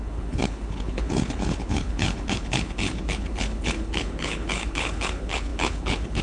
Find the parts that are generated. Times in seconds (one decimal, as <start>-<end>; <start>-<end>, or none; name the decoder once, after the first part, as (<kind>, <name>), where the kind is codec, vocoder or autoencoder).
0.0-6.2 (codec, HILCodec)